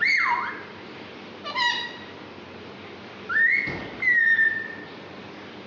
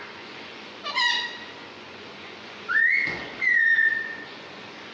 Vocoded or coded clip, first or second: second